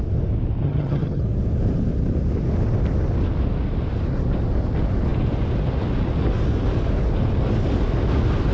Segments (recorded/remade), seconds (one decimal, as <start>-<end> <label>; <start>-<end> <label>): 0.0-0.6 recorded; 0.6-1.2 remade; 1.2-8.5 recorded